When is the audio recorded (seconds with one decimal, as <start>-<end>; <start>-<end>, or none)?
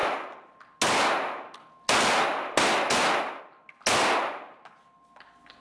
0.0-5.6